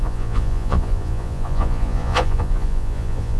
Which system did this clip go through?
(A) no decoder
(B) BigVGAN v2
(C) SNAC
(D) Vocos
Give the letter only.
D